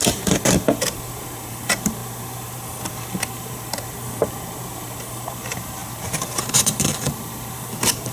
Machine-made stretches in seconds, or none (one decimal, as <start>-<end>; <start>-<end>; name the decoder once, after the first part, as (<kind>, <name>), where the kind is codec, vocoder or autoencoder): 0.0-8.1 (vocoder, BigVGAN v2)

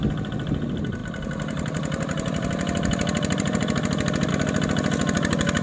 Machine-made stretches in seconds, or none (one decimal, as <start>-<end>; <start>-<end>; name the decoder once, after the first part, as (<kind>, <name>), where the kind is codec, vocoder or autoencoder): 1.0-4.3 (vocoder, BigVGAN v2)

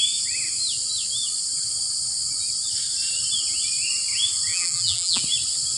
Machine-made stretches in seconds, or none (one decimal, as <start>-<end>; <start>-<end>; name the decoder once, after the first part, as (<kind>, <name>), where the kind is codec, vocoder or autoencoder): 4.5-5.2 (vocoder, BigVGAN v2)